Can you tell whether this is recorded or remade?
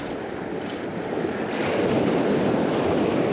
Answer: recorded